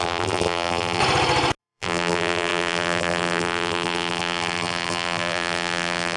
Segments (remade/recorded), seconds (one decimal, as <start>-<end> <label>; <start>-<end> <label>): 0.0-1.0 remade; 1.0-1.6 recorded; 1.6-6.2 remade